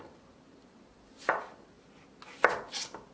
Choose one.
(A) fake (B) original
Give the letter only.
B